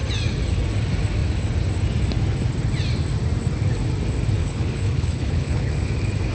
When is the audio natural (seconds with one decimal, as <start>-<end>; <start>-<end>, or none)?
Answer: 0.0-4.4; 5.7-6.3